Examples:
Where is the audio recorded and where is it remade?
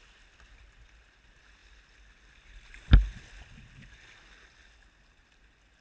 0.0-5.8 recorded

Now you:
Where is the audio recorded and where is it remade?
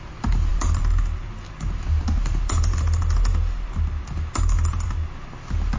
0.0-5.8 recorded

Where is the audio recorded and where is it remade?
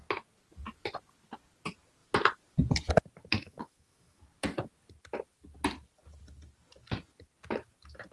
0.0-3.3 recorded; 3.3-4.2 remade; 4.2-8.1 recorded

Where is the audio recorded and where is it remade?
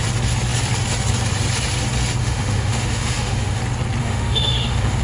0.0-2.2 recorded; 2.2-3.6 remade; 3.6-4.0 recorded; 4.0-5.0 remade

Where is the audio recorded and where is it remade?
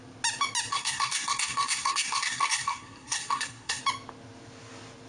0.0-0.7 recorded; 0.7-3.8 remade; 3.8-5.1 recorded